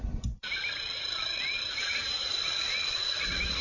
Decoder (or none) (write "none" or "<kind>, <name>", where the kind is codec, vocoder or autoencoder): none